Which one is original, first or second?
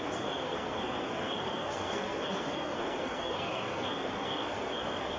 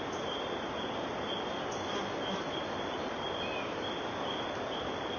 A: second